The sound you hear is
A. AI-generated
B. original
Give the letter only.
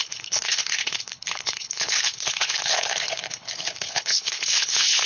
A